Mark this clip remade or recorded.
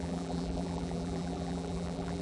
remade